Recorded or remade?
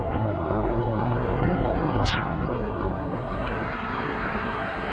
remade